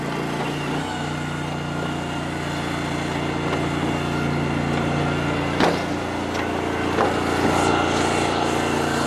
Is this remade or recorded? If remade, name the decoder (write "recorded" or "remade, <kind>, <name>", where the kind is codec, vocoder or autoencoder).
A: recorded